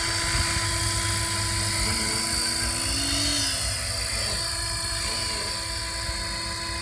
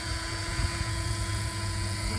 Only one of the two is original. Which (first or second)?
first